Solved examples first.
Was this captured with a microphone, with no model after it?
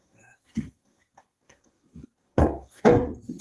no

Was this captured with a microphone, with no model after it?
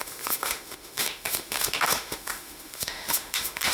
no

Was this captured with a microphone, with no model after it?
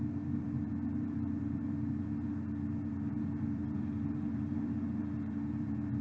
no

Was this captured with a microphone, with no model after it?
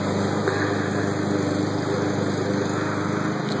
yes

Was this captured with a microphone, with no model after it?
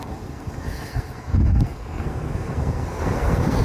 no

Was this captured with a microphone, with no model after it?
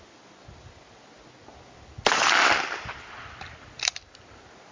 yes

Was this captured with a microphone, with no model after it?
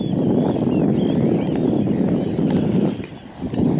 yes